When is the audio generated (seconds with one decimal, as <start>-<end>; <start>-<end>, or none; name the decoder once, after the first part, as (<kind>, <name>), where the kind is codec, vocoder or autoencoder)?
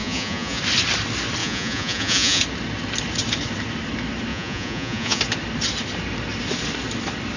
0.0-0.6 (vocoder, Vocos); 1.4-2.4; 4.3-5.2